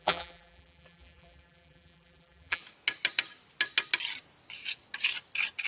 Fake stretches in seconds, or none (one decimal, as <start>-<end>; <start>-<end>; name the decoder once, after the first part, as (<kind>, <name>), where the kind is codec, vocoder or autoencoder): 0.0-2.6 (vocoder, BigVGAN v2)